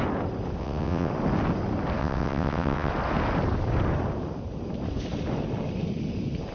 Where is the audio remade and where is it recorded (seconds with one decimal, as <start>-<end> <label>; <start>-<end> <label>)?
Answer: 0.0-0.6 recorded; 0.6-1.1 remade; 1.1-2.0 recorded; 2.0-2.9 remade; 2.9-6.5 recorded